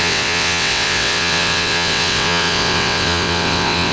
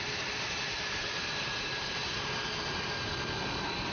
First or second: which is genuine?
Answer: second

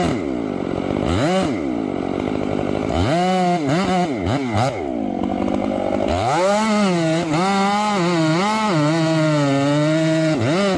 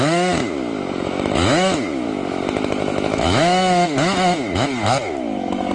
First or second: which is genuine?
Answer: first